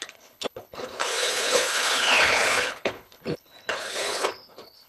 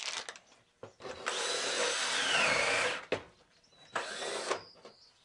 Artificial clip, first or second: first